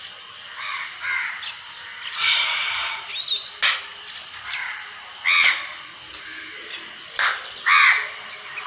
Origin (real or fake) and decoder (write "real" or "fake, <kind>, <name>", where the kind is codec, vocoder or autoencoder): real